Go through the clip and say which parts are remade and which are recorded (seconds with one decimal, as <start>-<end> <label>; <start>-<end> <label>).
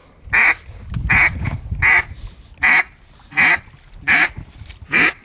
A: 0.0-5.2 recorded